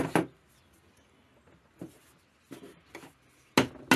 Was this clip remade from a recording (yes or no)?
no